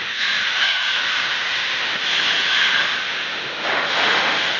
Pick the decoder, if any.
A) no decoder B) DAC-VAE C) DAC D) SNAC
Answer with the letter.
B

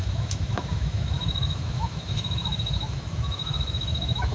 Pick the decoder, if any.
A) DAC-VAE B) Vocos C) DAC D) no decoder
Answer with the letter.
A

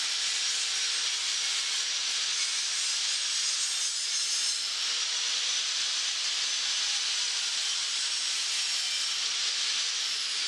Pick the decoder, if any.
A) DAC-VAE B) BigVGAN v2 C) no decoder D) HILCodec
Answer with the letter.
C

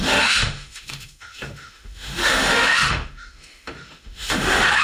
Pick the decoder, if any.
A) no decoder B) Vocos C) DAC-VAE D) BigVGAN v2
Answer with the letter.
C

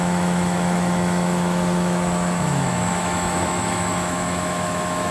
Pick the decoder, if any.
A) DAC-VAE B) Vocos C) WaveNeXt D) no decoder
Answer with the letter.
A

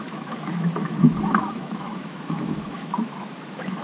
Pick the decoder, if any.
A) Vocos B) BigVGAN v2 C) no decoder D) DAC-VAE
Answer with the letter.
D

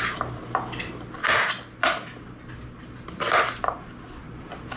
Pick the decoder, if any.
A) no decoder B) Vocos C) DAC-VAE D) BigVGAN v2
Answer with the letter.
A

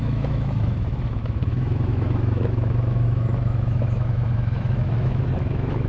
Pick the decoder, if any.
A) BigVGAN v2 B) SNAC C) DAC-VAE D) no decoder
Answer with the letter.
C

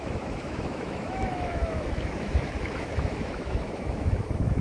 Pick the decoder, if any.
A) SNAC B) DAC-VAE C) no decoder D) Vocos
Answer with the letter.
B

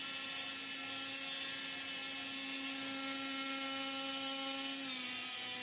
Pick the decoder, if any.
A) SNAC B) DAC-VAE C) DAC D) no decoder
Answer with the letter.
D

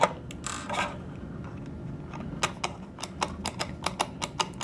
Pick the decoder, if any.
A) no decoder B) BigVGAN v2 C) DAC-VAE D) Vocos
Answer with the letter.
A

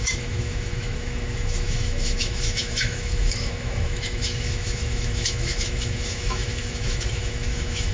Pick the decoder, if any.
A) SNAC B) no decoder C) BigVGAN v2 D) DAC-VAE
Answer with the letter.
D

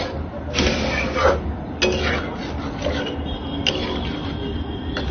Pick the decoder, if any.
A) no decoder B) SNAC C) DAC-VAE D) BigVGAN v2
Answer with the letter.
A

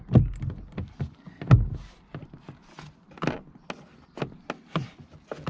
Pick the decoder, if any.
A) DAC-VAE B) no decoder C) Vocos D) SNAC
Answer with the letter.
B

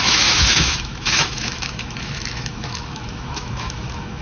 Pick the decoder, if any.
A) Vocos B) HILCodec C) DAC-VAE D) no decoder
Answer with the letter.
C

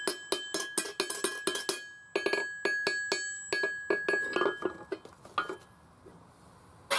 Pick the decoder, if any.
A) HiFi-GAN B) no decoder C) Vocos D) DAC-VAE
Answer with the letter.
B